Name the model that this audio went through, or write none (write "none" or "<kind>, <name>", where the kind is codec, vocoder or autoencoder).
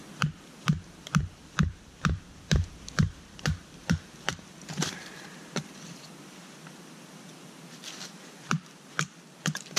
vocoder, BigVGAN v2